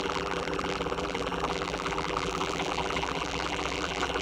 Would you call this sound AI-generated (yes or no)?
yes